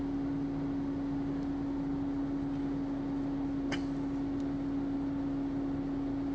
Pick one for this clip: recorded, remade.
recorded